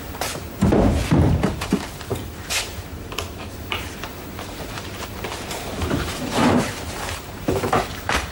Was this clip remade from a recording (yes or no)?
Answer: yes